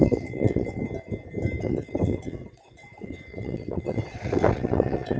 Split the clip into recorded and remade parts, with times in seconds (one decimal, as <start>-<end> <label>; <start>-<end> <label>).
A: 0.0-0.8 remade; 0.8-1.6 recorded; 1.6-5.2 remade